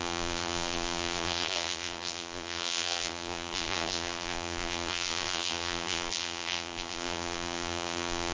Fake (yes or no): yes